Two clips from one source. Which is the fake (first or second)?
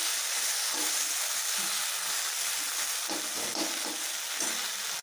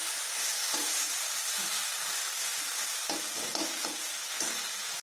second